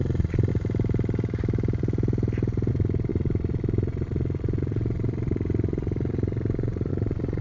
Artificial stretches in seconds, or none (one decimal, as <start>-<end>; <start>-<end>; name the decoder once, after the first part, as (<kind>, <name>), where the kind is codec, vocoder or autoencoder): 0.0-0.5 (vocoder, Vocos); 2.7-7.4